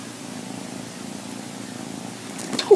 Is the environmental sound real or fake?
real